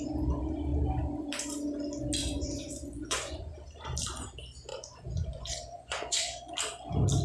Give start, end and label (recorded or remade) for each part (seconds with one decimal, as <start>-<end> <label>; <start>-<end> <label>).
0.0-2.2 recorded; 2.2-3.5 remade; 3.5-4.7 recorded; 4.7-6.5 remade; 6.5-7.2 recorded